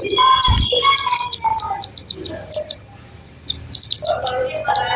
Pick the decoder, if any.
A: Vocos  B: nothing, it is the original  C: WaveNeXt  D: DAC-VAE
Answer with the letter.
B